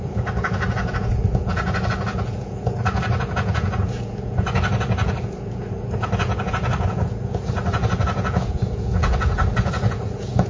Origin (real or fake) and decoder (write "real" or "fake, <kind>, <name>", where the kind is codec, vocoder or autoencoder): fake, vocoder, Vocos